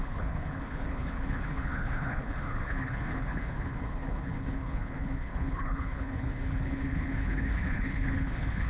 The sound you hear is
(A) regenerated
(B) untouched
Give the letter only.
A